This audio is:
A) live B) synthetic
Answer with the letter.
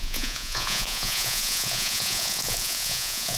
B